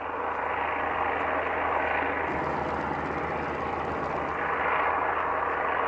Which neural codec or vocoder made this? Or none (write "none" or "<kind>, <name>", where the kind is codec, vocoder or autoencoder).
none